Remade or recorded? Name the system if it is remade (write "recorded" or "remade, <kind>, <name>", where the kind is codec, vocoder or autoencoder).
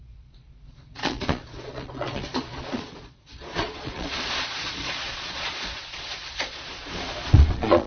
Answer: remade, vocoder, Vocos